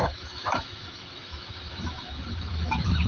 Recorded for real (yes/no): no